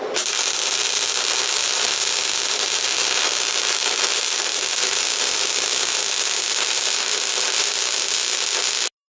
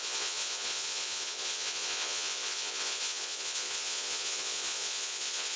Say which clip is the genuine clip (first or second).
first